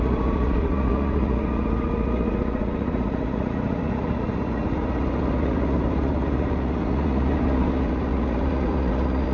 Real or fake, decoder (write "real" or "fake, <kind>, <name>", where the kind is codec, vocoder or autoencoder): fake, vocoder, Vocos